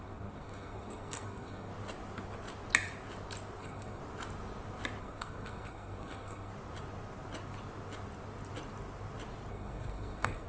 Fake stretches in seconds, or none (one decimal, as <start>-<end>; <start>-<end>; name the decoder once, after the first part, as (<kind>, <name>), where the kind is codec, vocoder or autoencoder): 0.0-1.7 (codec, SNAC); 3.6-4.0; 5.0-6.5; 9.5-10.5